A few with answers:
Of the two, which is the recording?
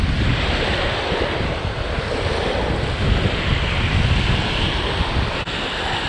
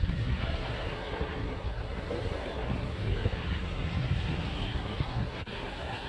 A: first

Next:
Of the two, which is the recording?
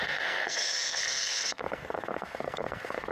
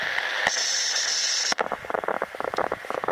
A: second